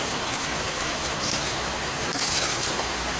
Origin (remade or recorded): remade